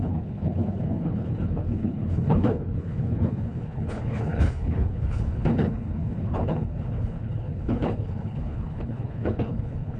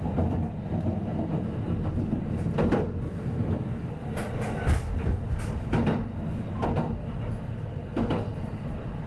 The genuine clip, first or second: second